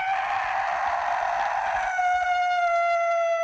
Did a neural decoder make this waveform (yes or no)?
no